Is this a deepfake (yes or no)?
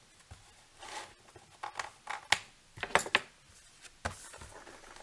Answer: no